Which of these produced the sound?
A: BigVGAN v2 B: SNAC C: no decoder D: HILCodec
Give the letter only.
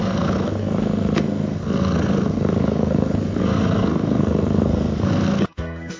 B